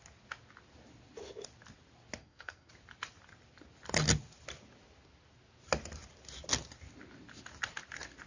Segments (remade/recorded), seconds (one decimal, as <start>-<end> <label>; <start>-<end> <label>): 0.0-2.2 recorded; 2.2-2.7 remade; 2.7-8.3 recorded